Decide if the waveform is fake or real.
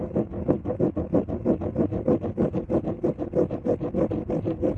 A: real